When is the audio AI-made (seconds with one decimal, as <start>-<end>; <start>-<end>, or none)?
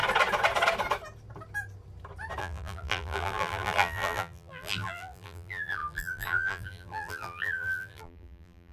2.4-8.7